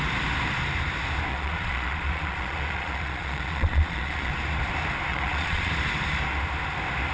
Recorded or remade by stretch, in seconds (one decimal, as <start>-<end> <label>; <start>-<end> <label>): 0.0-1.3 recorded; 1.3-4.3 remade; 4.3-5.1 recorded; 5.1-5.7 remade; 5.7-7.1 recorded